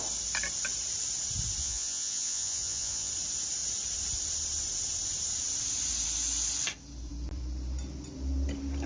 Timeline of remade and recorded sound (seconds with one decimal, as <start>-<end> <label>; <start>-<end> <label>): 0.0-1.6 recorded; 1.6-3.1 remade; 3.1-8.9 recorded

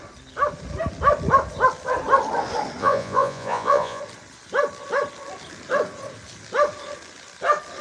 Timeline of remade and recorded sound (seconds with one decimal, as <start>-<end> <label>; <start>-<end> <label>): 0.0-2.8 recorded; 2.8-4.0 remade; 4.0-7.8 recorded